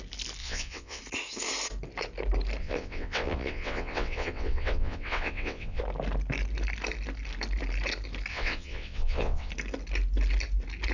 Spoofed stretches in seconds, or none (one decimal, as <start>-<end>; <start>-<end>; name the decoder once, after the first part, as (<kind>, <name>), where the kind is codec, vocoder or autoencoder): 0.4-1.0 (vocoder, WaveNeXt); 2.6-5.8; 8.3-9.5